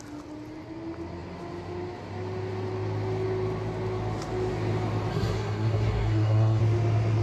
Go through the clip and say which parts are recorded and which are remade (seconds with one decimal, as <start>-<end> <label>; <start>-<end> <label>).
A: 0.0-5.1 recorded; 5.1-6.6 remade; 6.6-7.2 recorded